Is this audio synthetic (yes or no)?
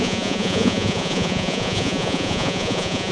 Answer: yes